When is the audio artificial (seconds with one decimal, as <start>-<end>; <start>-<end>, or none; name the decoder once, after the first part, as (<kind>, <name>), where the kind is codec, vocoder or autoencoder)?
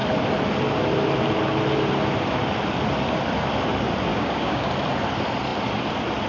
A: 4.1-4.7 (codec, DAC)